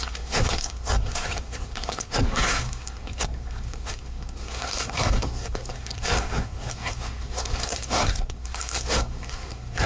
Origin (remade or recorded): remade